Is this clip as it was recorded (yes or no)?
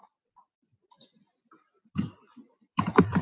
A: no